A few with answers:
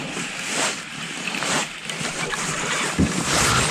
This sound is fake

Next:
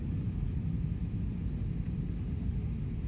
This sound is real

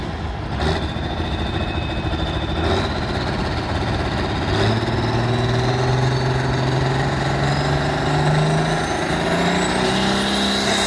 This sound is real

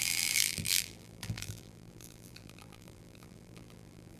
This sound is fake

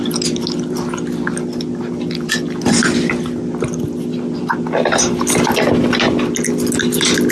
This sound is real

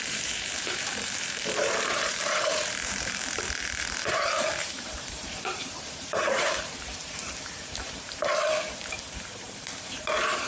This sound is fake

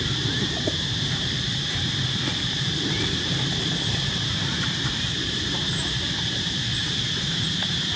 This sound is fake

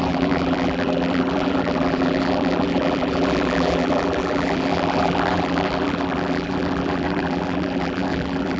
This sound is fake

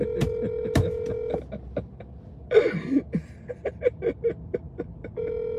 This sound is real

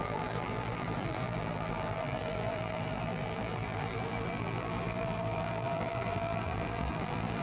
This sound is fake